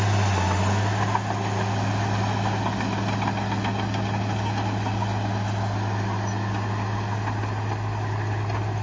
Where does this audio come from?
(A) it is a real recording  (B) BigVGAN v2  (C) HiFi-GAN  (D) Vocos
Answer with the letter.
A